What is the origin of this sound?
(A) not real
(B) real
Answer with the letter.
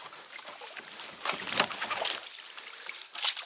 B